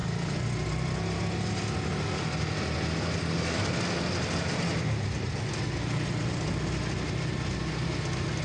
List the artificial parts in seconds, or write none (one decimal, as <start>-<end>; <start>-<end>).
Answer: none